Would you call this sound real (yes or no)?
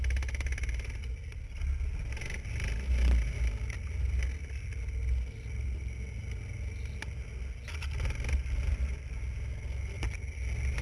yes